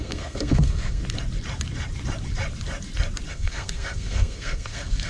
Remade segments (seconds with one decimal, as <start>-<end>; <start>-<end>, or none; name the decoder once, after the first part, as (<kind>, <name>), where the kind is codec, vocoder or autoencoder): 0.0-1.0 (codec, SNAC); 3.3-5.1

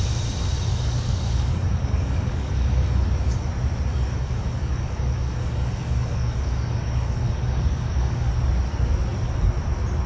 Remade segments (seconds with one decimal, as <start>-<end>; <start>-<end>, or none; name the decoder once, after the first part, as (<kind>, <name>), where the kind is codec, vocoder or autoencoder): 0.7-3.5 (codec, DAC); 3.9-8.3